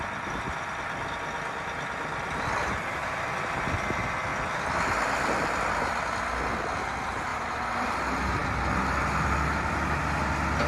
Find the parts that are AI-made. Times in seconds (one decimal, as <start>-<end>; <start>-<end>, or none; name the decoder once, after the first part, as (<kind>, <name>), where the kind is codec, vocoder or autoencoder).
4.3-5.5 (vocoder, BigVGAN v2); 7.3-8.0